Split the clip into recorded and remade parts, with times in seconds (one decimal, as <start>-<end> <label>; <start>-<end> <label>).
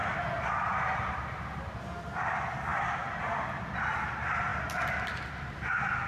0.0-6.1 recorded